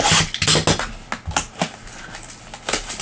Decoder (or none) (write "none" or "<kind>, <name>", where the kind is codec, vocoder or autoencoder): none